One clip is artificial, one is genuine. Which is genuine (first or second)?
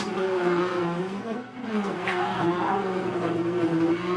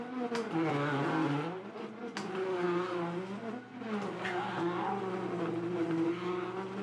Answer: second